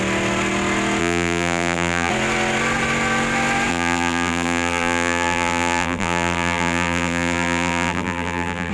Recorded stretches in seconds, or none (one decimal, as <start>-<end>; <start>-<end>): 0.0-1.0; 2.1-3.7